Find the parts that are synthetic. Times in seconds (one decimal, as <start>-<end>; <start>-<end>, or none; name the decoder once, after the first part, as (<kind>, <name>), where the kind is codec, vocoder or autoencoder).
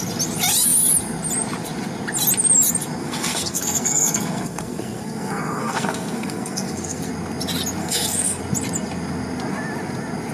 3.0-7.1 (codec, SNAC); 7.8-8.4